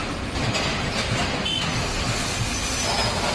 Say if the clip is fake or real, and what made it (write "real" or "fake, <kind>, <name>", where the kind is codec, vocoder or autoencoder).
real